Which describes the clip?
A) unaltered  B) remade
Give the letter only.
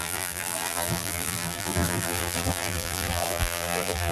B